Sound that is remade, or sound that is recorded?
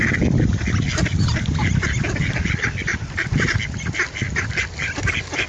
recorded